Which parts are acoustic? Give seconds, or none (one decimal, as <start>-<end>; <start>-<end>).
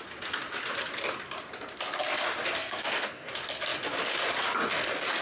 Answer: 0.0-2.6; 3.3-5.2